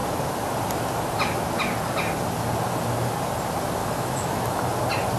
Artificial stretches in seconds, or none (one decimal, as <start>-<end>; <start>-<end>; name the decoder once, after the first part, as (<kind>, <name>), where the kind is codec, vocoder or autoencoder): 3.8-4.6 (autoencoder, DAC-VAE)